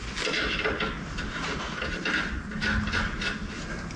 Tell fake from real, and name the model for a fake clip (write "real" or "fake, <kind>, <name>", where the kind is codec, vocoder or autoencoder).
real